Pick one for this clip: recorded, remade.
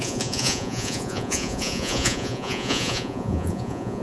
remade